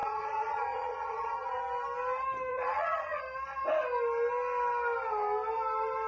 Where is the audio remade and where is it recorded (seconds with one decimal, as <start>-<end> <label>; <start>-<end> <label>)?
0.0-1.6 remade; 1.6-2.5 recorded; 2.5-3.2 remade; 3.2-6.1 recorded